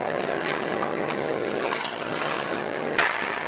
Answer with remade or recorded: remade